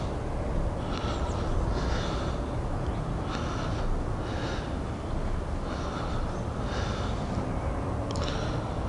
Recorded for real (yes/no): yes